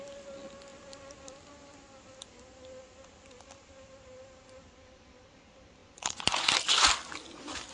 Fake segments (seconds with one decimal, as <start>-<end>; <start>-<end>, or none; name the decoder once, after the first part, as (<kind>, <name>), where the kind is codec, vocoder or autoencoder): 5.8-6.5 (vocoder, Vocos)